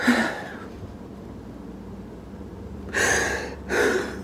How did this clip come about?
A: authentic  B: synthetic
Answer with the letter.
A